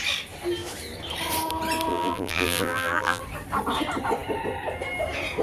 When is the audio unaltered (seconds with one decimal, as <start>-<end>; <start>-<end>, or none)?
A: 0.0-1.9; 3.2-5.4